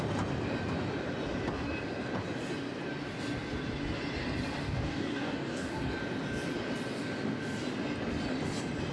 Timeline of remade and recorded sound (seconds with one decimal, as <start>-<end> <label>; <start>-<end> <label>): 0.0-4.6 recorded; 4.6-5.7 remade; 5.7-8.9 recorded